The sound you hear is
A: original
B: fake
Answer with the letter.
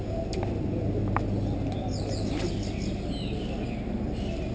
A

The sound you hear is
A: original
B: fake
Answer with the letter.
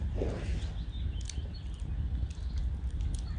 A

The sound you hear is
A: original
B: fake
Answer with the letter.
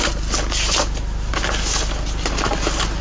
A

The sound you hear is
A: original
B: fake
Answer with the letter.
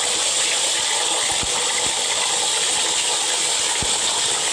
A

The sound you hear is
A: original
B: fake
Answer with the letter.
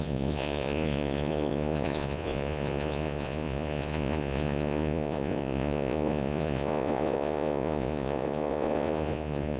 B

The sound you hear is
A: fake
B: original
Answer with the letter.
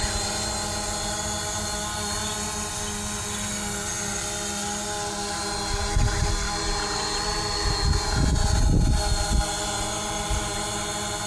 B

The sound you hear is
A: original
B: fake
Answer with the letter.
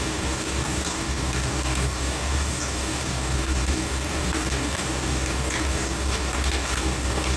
B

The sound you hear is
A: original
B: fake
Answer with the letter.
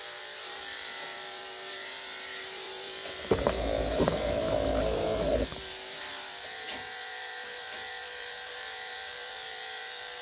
B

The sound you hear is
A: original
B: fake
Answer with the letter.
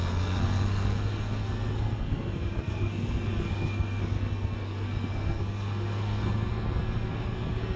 B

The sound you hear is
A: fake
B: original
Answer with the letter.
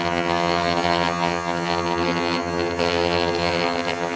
A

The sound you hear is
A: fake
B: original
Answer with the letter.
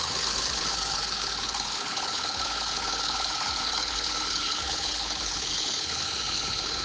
A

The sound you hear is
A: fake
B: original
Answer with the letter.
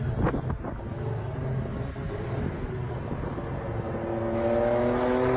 B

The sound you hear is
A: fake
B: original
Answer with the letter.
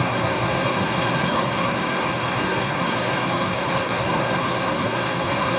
A